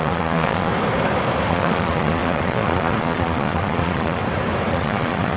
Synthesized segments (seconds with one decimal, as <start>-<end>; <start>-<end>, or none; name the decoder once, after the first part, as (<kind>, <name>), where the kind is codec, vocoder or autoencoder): 0.0-0.7 (vocoder, Vocos); 1.5-4.2; 4.7-5.4